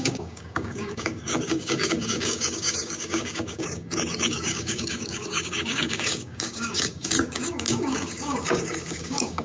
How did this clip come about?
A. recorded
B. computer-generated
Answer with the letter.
B